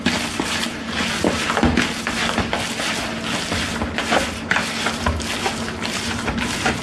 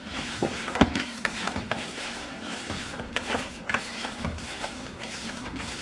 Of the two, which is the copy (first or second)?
second